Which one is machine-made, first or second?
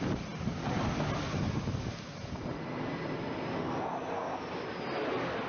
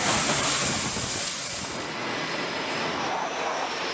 second